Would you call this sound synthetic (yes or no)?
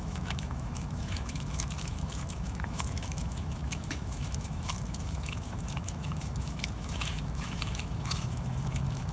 yes